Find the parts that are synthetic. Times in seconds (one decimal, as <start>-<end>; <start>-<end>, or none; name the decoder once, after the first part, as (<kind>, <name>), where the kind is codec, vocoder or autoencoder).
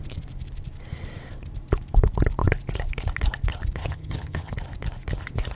3.8-4.5 (vocoder, HiFi-GAN)